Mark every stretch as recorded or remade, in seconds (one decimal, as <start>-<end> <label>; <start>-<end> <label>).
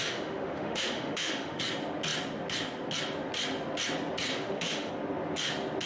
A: 0.0-1.6 remade; 1.6-4.3 recorded; 4.3-4.9 remade; 4.9-5.9 recorded